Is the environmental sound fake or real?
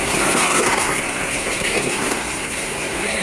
fake